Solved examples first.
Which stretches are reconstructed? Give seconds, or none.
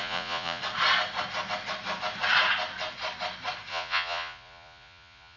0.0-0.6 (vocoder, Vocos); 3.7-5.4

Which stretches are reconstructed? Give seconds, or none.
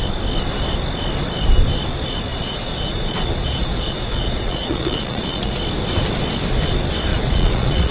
2.3-5.6 (vocoder, Vocos); 7.1-7.9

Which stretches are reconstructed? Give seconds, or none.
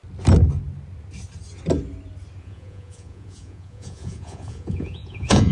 2.4-5.5 (vocoder, Vocos)